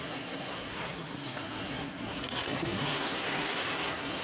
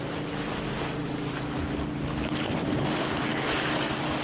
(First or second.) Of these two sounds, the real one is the second